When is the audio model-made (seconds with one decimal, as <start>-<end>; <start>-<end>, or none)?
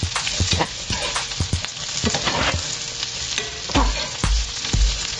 0.0-1.7; 3.9-5.2